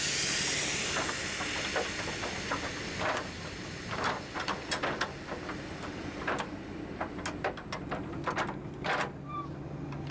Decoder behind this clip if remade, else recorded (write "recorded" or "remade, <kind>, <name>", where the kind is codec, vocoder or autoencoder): recorded